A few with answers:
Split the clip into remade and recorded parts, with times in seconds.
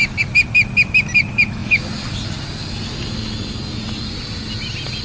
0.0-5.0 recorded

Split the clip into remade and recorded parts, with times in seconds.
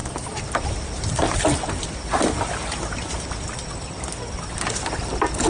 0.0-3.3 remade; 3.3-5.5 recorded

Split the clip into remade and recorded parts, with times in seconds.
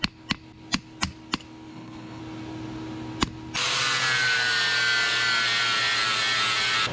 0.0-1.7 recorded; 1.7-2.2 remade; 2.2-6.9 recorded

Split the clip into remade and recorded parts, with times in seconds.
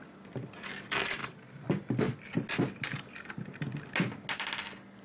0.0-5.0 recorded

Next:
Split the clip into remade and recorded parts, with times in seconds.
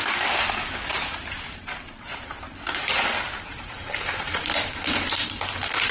0.0-5.9 remade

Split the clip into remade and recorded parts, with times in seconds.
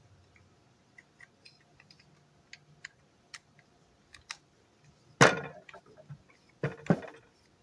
0.0-7.6 recorded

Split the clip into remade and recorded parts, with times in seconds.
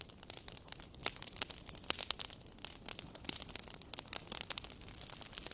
0.0-5.5 recorded